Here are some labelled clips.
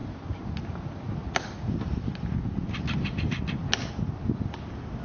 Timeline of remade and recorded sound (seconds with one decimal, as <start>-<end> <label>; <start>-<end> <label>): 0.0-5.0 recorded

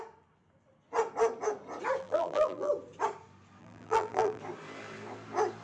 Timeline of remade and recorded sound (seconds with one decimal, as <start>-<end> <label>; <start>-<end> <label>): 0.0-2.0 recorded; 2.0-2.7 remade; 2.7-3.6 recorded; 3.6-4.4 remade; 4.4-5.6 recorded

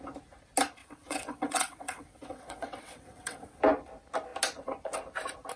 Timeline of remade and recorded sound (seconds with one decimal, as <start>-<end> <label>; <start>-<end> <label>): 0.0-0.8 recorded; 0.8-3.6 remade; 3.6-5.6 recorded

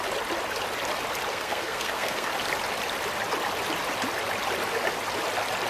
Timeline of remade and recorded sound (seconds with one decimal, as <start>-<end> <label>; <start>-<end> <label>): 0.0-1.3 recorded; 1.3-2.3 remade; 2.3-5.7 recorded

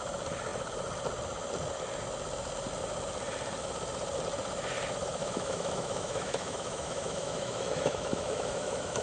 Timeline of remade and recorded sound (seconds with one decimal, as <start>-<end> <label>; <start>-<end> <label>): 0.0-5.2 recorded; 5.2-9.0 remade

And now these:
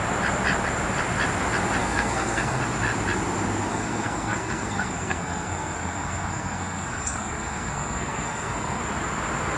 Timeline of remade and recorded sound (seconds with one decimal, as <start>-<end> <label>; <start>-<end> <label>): 0.0-1.8 recorded; 1.8-2.6 remade; 2.6-3.7 recorded; 3.7-8.8 remade; 8.8-9.6 recorded

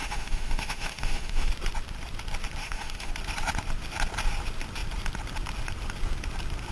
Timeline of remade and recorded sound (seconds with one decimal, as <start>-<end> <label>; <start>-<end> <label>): 0.0-1.5 remade; 1.5-2.6 recorded; 2.6-3.1 remade; 3.1-6.7 recorded

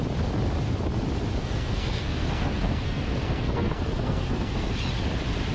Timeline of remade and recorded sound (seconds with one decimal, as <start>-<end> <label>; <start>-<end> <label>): 0.0-1.4 recorded; 1.4-4.7 remade; 4.7-5.5 recorded